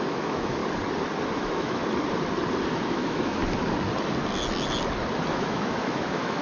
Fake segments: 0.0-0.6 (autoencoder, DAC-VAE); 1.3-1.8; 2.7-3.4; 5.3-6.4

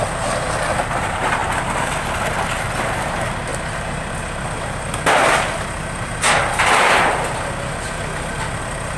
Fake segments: none

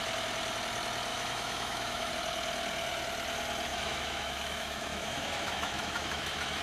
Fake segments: 1.1-2.1 (autoencoder, DAC-VAE); 3.7-6.6

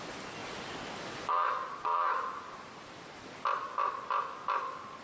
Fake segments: none

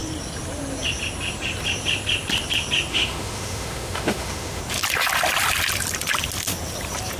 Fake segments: 2.9-4.6 (autoencoder, DAC-VAE)

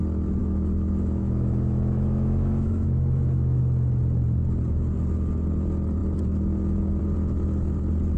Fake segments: 0.4-3.6 (autoencoder, DAC-VAE)

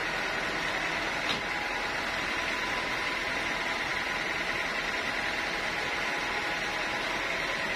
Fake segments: none

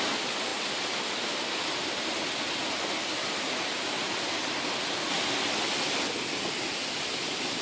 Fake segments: none